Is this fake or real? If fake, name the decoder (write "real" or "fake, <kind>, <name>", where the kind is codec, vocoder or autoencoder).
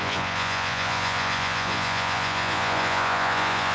fake, vocoder, Vocos